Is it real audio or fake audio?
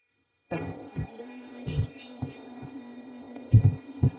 fake